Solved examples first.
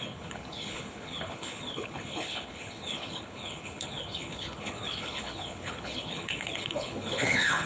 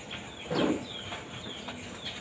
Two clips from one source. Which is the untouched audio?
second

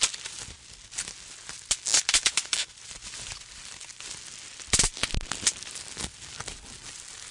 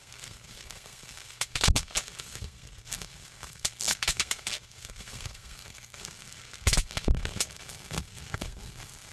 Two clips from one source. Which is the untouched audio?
first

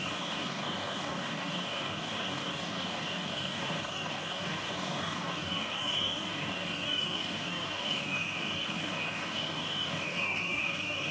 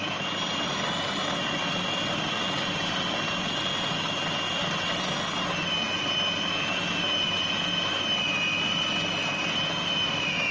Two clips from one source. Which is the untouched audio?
second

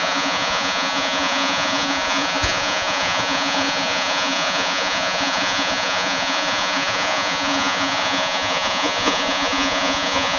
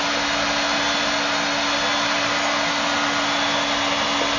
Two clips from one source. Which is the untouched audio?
second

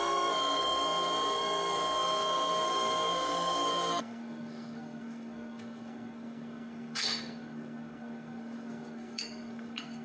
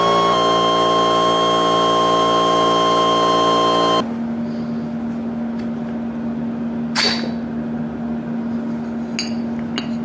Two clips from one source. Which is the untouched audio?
second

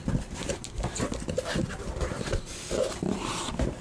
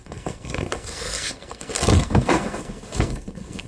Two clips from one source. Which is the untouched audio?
first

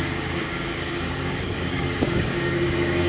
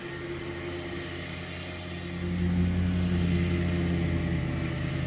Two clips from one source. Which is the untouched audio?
second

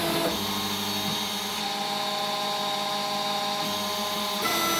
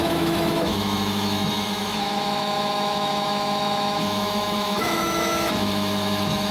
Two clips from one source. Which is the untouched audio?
first